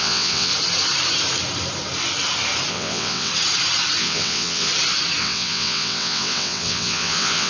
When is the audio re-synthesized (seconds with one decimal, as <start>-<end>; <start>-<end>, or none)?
0.0-0.5; 2.7-3.3; 4.0-4.7; 5.2-7.5